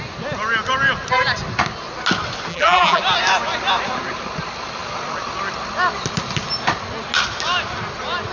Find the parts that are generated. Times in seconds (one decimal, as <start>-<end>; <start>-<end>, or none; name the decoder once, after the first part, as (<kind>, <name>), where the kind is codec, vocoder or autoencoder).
2.5-3.0 (vocoder, BigVGAN v2)